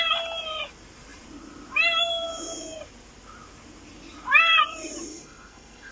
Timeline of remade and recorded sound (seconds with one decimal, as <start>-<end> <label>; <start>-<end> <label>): 0.0-5.1 recorded; 5.1-5.9 remade